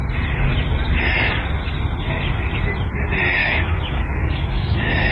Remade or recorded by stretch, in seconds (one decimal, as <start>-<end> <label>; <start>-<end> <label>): 0.0-3.4 recorded; 3.4-5.1 remade

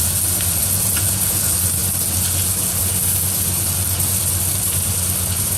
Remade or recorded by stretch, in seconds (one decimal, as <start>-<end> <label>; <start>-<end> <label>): 0.0-0.6 recorded; 0.6-1.4 remade; 1.4-5.6 recorded

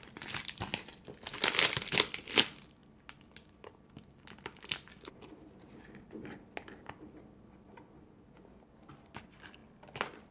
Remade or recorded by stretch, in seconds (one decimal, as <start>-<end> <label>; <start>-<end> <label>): 0.0-10.3 recorded

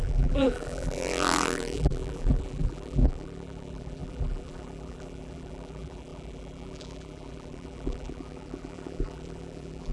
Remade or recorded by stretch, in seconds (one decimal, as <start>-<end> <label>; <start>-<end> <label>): 0.0-9.9 remade

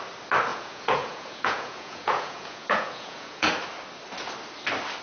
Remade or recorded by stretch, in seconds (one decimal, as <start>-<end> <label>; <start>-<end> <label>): 0.0-0.5 recorded; 0.5-3.5 remade; 3.5-5.0 recorded